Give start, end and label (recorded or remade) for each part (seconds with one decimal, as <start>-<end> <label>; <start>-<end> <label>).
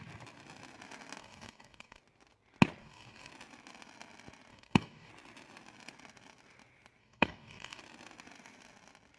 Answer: 0.0-1.2 recorded; 1.2-2.0 remade; 2.0-2.8 recorded; 2.8-3.3 remade; 3.3-4.5 recorded; 4.5-5.1 remade; 5.1-7.0 recorded; 7.0-7.8 remade; 7.8-9.2 recorded